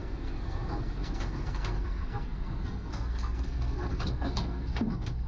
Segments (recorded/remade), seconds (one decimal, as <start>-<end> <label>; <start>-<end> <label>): 0.0-5.3 remade